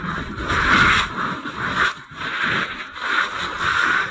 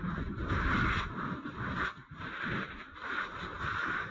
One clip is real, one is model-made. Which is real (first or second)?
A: first